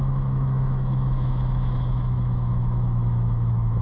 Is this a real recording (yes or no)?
no